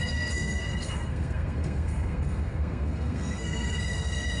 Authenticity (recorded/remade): remade